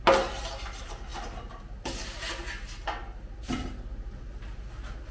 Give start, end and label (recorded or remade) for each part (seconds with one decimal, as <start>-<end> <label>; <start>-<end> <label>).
0.0-5.1 recorded